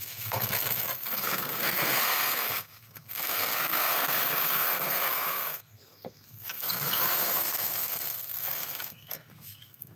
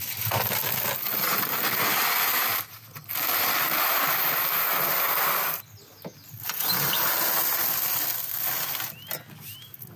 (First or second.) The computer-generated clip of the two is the first